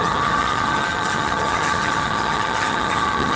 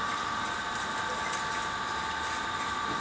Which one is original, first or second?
second